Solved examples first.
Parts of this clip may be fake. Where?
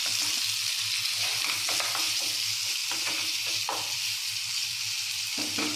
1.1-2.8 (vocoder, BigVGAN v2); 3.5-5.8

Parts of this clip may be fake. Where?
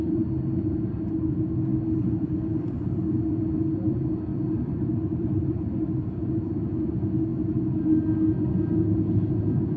4.3-5.6 (vocoder, BigVGAN v2)